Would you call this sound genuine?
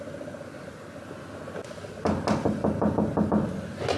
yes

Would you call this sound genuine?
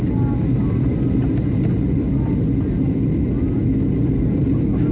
yes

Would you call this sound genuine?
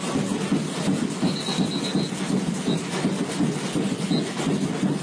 yes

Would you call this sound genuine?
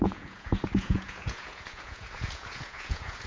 no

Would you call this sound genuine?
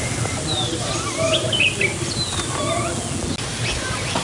yes